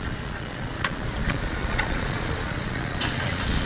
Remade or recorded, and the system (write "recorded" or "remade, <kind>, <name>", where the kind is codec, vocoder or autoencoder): remade, vocoder, Vocos